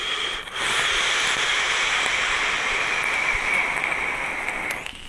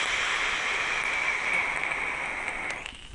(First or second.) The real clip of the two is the second